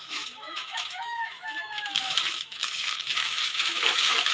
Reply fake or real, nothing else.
fake